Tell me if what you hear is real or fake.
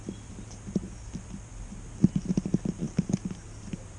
real